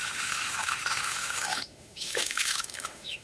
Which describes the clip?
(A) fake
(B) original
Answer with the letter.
A